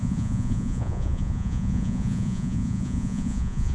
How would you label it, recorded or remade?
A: remade